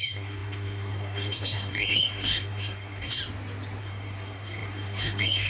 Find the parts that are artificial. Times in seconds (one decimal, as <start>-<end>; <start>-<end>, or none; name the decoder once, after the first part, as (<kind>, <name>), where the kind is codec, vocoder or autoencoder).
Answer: 0.0-3.2 (codec, SNAC); 3.8-5.5